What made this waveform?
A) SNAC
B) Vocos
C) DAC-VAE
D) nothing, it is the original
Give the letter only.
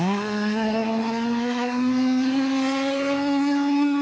A